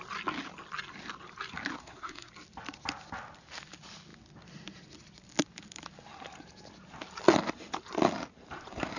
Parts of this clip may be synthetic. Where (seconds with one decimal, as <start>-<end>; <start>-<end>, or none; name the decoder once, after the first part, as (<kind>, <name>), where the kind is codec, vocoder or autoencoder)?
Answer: 1.8-2.3 (codec, SNAC)